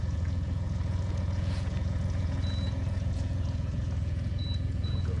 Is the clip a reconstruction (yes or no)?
yes